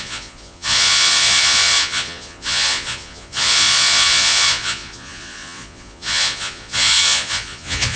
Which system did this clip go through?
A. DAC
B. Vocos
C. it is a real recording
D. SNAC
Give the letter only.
B